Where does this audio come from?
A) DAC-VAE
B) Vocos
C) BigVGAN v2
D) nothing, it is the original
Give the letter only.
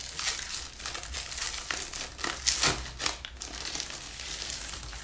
D